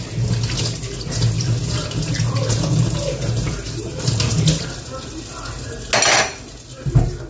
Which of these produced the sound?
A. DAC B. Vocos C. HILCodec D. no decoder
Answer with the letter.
D